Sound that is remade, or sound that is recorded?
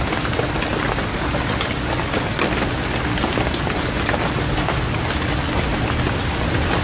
recorded